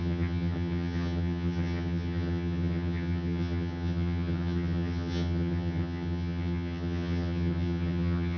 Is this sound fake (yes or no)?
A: yes